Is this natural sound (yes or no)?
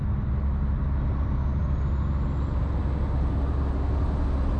yes